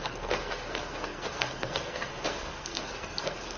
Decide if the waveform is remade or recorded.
remade